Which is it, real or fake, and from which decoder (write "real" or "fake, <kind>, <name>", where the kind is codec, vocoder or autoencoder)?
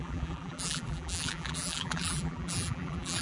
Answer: fake, vocoder, BigVGAN v2